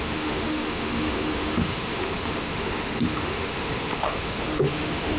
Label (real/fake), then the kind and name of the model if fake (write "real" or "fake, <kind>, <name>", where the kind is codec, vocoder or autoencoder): fake, autoencoder, DAC-VAE